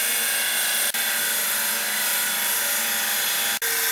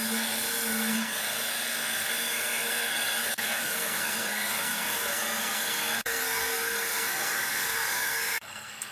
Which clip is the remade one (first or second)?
second